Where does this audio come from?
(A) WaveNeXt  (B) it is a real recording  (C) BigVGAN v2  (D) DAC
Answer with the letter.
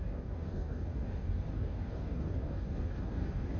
D